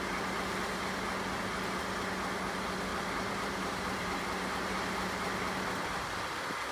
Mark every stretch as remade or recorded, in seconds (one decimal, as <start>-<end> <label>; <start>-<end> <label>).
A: 0.0-2.9 recorded; 2.9-4.2 remade; 4.2-6.7 recorded